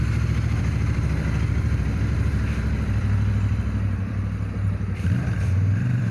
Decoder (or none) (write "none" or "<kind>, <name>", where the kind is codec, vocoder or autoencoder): vocoder, BigVGAN v2